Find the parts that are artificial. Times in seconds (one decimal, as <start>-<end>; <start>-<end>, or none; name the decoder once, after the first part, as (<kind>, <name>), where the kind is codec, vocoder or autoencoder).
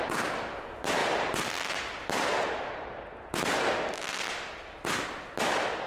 0.0-1.0 (vocoder, BigVGAN v2); 4.5-5.9